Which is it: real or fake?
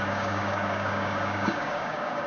fake